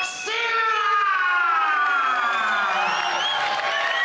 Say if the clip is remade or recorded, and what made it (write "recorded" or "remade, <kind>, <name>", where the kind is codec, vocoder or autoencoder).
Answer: recorded